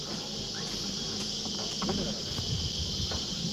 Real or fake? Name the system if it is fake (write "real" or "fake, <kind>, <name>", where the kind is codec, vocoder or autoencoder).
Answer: real